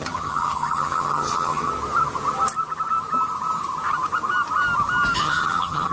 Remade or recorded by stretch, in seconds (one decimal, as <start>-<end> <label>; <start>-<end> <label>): 0.0-1.7 remade; 1.7-5.2 recorded; 5.2-5.9 remade